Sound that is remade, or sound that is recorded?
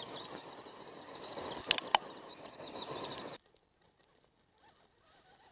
recorded